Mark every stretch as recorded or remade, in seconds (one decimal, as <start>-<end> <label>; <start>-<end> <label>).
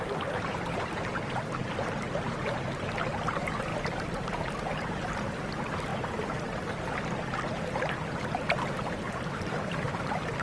0.0-1.6 remade; 1.6-2.5 recorded; 2.5-5.9 remade; 5.9-8.2 recorded; 8.2-10.4 remade